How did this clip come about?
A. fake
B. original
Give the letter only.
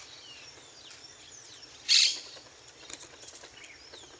B